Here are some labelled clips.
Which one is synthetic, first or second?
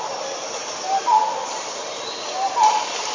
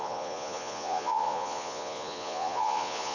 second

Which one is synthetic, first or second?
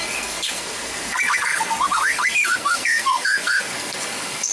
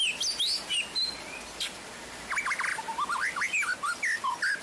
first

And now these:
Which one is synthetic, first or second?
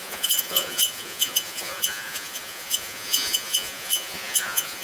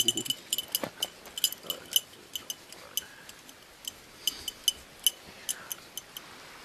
first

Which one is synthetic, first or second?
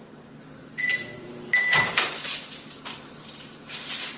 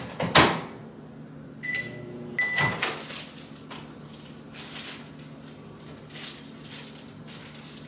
first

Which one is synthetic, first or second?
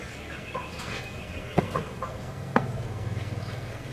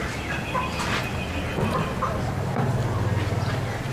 first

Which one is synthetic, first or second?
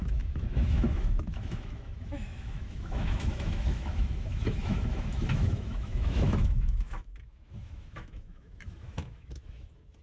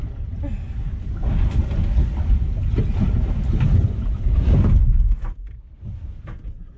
first